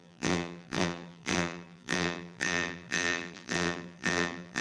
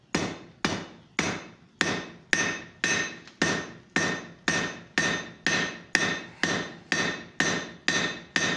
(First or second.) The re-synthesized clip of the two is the first